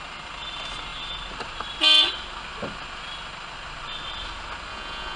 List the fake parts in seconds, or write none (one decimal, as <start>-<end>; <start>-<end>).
4.7-5.2